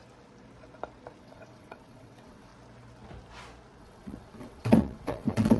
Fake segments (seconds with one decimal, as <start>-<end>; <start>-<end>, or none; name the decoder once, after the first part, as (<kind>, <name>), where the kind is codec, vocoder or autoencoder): 1.2-2.5 (vocoder, WaveNeXt); 3.8-5.6